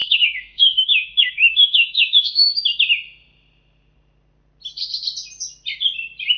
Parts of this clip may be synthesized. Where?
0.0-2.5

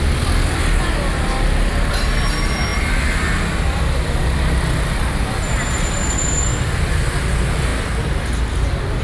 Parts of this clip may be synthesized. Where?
none

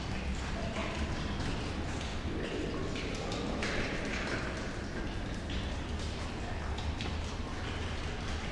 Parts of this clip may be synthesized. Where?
none

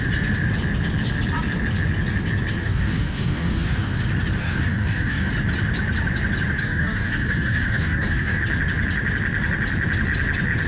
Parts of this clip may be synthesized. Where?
2.6-4.0; 4.4-5.3; 6.6-8.4